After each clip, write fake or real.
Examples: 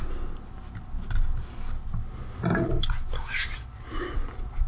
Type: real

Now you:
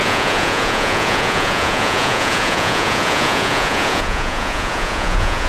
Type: fake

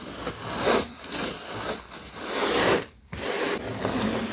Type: real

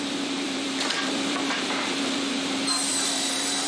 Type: fake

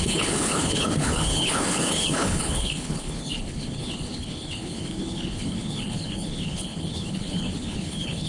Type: fake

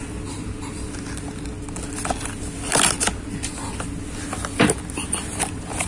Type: real